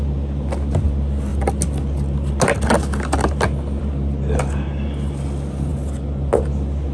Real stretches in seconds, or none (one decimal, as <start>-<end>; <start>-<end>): 0.0-6.9